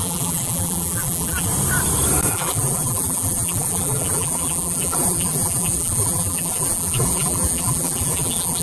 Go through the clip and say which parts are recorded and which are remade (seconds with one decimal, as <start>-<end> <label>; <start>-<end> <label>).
0.0-1.5 remade; 1.5-2.3 recorded; 2.3-8.6 remade